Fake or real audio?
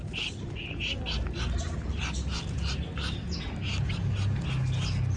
real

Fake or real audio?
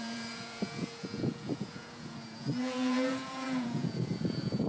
fake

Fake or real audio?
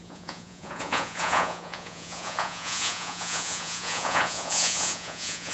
fake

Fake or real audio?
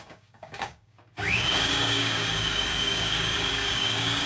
fake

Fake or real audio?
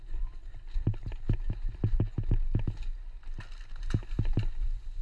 real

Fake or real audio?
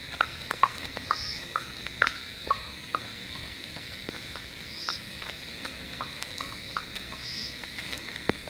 fake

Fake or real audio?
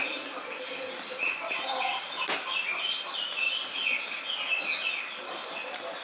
real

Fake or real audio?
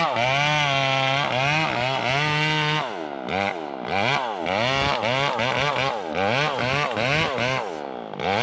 real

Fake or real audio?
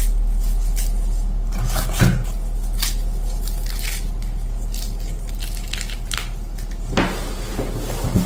real